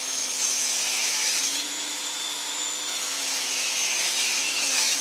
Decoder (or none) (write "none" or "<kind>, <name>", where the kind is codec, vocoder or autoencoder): autoencoder, DAC-VAE